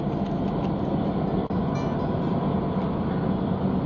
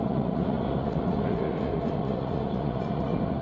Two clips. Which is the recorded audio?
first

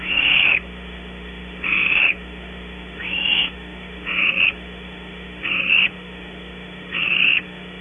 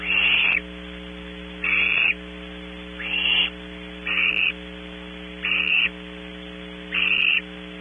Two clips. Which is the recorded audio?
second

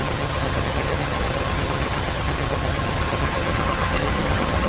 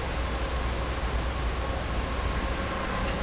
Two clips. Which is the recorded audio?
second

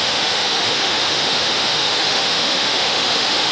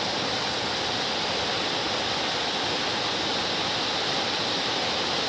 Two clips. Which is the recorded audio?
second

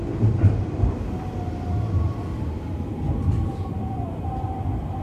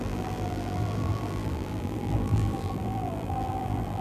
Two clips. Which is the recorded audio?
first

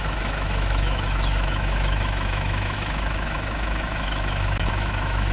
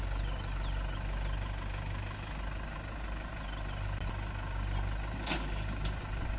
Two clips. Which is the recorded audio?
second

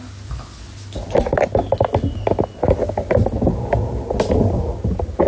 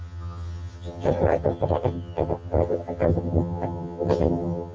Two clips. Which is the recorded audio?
first